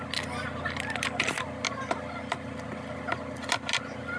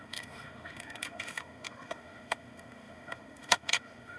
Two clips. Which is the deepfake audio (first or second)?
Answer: second